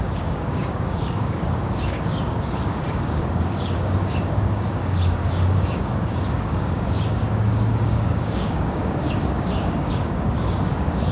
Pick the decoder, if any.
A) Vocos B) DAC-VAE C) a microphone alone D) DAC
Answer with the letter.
D